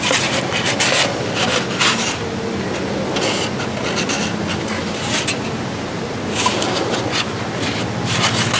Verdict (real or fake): real